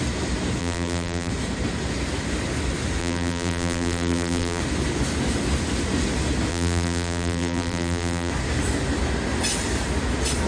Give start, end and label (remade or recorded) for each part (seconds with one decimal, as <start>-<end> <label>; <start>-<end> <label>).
0.0-0.6 recorded; 0.6-1.3 remade; 1.3-3.0 recorded; 3.0-4.6 remade; 4.6-6.5 recorded; 6.5-8.3 remade; 8.3-10.5 recorded

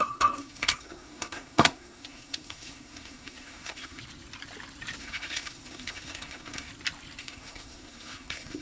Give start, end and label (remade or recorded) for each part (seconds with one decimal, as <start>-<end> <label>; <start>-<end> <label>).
0.0-4.0 remade; 4.0-5.0 recorded; 5.0-6.7 remade; 6.7-7.2 recorded; 7.2-8.6 remade

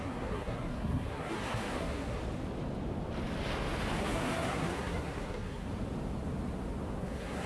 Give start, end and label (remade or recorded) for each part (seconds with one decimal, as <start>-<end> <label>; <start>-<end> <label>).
0.0-2.2 remade; 2.2-4.0 recorded; 4.0-5.7 remade; 5.7-7.0 recorded; 7.0-7.5 remade